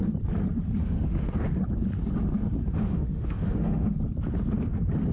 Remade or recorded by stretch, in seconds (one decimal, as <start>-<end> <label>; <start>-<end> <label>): 0.0-0.8 recorded; 0.8-1.3 remade; 1.3-2.8 recorded; 2.8-4.0 remade; 4.0-5.1 recorded